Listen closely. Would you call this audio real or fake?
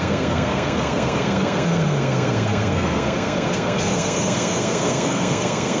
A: fake